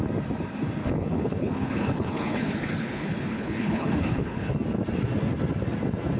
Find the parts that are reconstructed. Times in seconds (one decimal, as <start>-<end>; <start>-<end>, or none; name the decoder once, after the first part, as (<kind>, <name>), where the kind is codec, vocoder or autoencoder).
0.8-4.5 (codec, HILCodec)